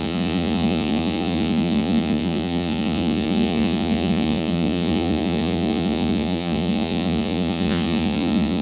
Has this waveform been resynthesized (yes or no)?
yes